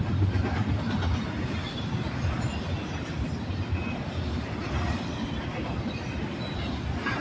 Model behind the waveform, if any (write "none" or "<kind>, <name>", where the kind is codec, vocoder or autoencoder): none